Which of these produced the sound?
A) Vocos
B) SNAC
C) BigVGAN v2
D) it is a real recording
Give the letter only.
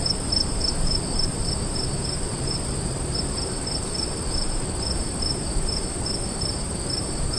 C